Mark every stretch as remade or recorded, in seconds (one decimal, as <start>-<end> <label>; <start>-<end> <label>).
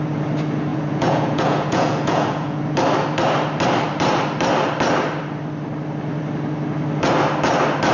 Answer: 0.0-0.7 recorded; 0.7-2.6 remade; 2.6-7.9 recorded